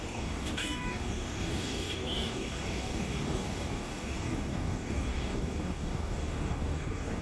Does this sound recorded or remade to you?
remade